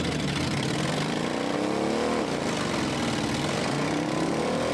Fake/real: real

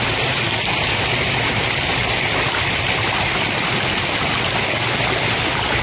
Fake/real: real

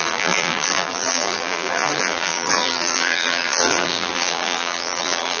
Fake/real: fake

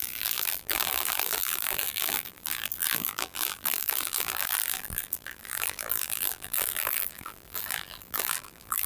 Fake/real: fake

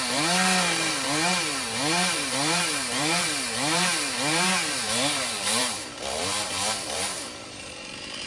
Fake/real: fake